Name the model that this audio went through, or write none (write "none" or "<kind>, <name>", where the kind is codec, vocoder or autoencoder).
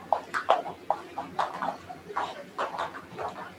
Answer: vocoder, BigVGAN v2